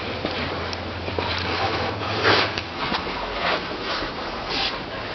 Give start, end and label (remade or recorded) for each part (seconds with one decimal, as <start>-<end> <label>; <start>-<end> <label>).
0.0-1.4 recorded; 1.4-4.5 remade; 4.5-5.1 recorded